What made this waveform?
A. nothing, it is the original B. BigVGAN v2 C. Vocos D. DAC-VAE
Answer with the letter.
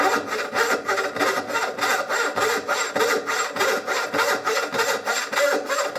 A